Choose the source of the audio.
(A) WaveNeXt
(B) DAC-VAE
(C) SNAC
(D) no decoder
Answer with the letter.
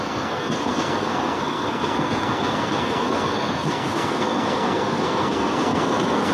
C